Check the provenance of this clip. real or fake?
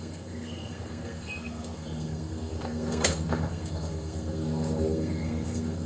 fake